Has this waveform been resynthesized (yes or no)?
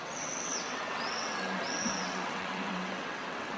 yes